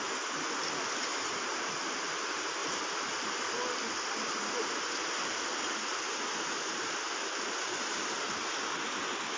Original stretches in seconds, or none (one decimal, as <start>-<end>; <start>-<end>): 0.0-9.4